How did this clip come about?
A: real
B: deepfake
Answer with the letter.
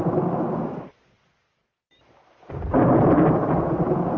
A